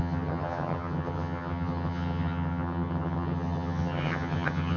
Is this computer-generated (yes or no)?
yes